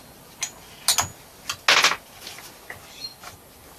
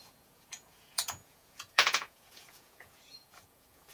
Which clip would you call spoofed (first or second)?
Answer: second